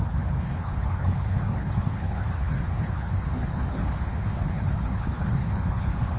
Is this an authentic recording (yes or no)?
no